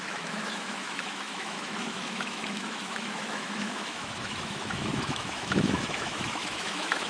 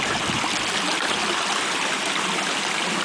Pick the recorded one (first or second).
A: second